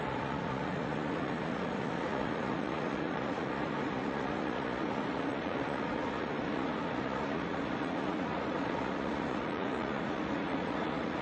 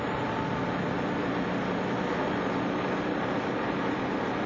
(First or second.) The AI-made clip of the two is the first